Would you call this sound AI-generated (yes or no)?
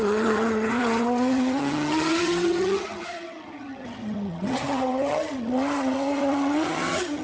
yes